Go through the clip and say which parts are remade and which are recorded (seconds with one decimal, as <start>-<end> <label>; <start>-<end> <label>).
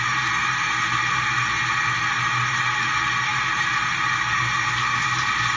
0.0-5.6 recorded